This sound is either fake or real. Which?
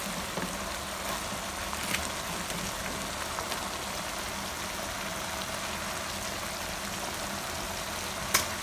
real